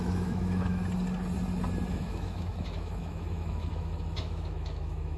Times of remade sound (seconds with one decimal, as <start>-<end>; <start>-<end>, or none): 0.0-0.8; 1.9-5.2